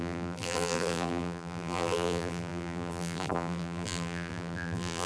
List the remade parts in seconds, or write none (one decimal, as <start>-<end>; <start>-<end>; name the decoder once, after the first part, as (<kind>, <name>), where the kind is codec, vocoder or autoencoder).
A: 0.0-5.1 (vocoder, BigVGAN v2)

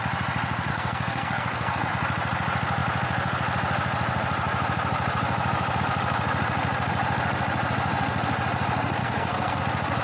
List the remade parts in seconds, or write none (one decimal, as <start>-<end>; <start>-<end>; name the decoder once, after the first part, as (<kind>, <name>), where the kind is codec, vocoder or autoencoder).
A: 0.7-1.9 (codec, SNAC); 9.0-9.6

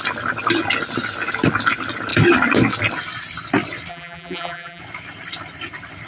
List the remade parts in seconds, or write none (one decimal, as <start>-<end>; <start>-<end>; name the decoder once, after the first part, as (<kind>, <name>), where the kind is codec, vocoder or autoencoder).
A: 3.9-4.8 (vocoder, BigVGAN v2)

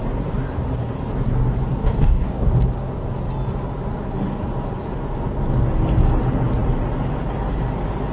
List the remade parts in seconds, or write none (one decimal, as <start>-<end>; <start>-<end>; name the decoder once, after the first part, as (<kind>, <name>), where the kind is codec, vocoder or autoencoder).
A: 1.8-2.5 (codec, DAC)